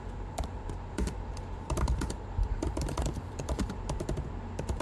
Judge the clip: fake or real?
fake